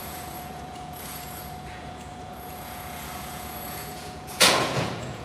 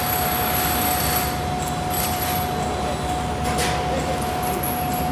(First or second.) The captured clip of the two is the second